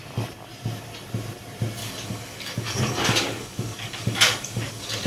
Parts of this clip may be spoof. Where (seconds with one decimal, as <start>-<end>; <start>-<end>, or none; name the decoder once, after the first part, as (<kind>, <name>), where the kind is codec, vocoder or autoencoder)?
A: 1.8-5.1 (codec, DAC)